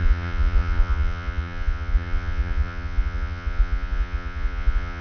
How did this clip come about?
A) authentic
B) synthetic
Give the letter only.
B